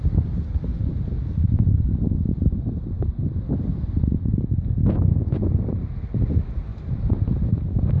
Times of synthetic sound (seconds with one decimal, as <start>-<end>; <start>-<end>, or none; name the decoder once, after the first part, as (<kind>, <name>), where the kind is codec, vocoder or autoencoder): none